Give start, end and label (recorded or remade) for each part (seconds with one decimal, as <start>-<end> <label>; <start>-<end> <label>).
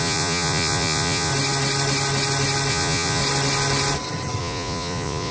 0.0-1.3 remade; 1.3-2.7 recorded; 2.7-3.2 remade; 3.2-4.4 recorded; 4.4-5.3 remade